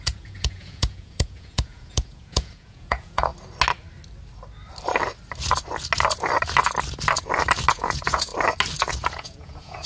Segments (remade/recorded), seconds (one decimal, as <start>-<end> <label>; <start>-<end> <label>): 0.0-3.3 remade; 3.3-7.7 recorded; 7.7-8.3 remade; 8.3-8.9 recorded; 8.9-9.9 remade